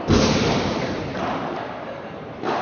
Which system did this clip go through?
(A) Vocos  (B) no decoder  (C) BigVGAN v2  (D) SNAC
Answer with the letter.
B